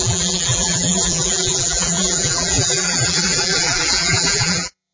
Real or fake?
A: fake